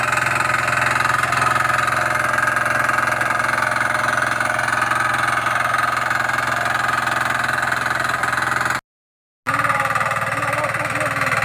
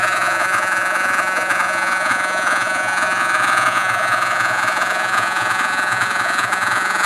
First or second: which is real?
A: first